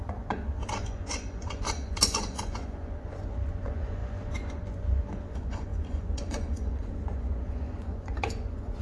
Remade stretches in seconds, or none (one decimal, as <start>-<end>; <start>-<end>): 0.0-8.8